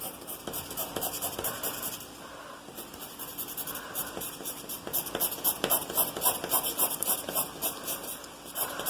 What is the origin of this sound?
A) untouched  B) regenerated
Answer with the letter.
A